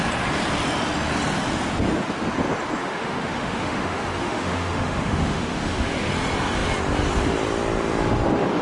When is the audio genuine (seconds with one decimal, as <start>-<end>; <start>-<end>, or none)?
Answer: 0.0-2.8; 6.1-8.6